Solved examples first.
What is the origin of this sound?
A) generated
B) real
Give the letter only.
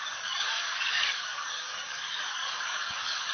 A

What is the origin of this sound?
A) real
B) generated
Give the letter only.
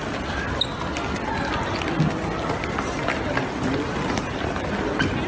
A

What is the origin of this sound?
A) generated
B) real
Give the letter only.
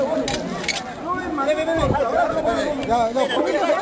B